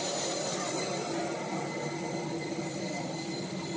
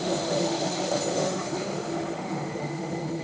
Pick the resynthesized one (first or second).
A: second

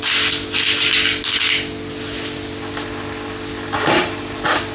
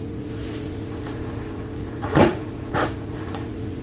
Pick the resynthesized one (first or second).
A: second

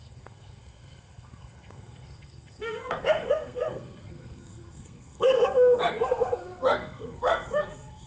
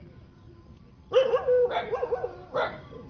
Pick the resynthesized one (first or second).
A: first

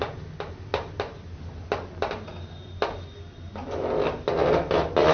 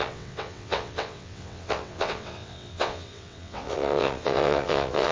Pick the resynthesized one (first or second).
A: second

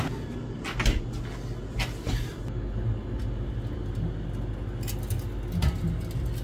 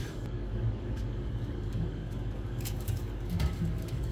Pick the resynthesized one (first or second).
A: second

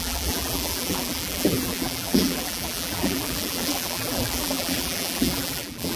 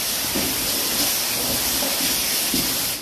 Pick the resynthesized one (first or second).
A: first